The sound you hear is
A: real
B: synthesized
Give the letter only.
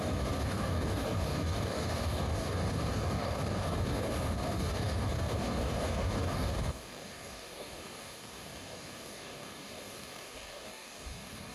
B